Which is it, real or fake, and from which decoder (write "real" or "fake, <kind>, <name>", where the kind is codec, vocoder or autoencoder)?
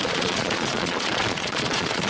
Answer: fake, vocoder, Vocos